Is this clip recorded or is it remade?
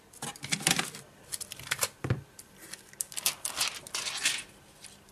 recorded